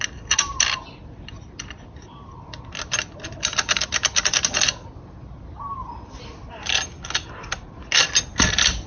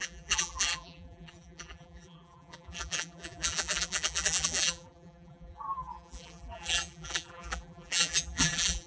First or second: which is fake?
second